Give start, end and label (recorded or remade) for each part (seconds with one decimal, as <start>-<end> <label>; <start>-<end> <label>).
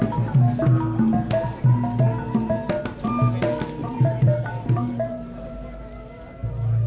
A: 0.0-3.8 recorded; 3.8-5.8 remade; 5.8-6.9 recorded